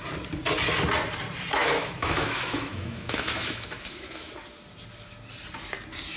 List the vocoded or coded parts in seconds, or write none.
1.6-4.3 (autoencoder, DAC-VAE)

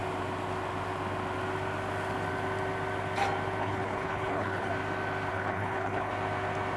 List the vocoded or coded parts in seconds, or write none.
3.6-4.7 (codec, HILCodec); 5.3-6.1